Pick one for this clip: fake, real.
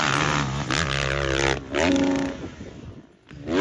real